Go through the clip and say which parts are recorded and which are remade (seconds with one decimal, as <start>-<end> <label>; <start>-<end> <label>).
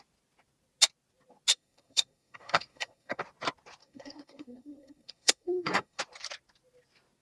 0.0-1.5 recorded; 1.5-3.2 remade; 3.2-3.8 recorded; 3.8-6.0 remade; 6.0-7.2 recorded